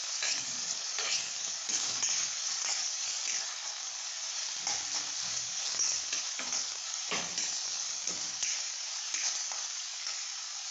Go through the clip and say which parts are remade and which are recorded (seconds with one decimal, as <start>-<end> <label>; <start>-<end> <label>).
0.0-4.4 remade; 4.4-5.3 recorded; 5.3-10.7 remade